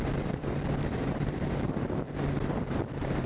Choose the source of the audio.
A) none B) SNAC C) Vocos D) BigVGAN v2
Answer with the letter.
D